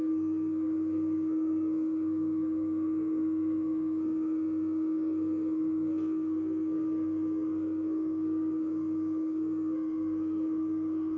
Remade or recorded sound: remade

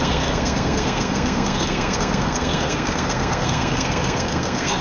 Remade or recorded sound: remade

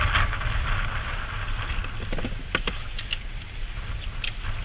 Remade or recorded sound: recorded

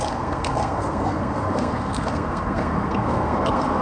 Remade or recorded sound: remade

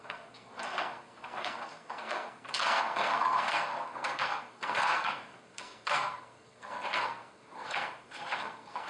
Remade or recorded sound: remade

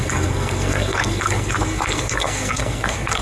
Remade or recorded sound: remade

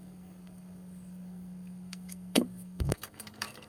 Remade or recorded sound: remade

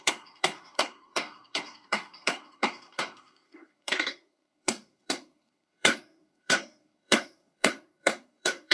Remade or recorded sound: remade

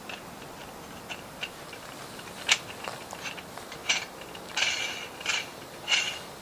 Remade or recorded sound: recorded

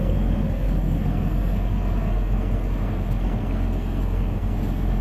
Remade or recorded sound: remade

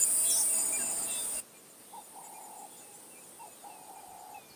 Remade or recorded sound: recorded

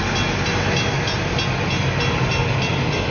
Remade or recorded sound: recorded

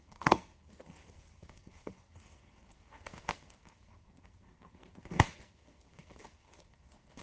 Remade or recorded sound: remade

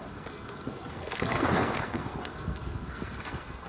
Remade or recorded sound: remade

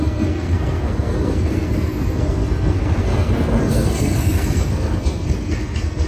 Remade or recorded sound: remade